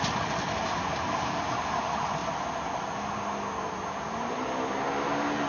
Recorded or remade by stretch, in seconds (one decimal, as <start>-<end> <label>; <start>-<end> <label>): 0.0-5.5 recorded